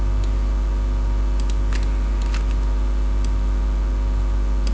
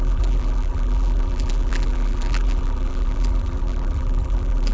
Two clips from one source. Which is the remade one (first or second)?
second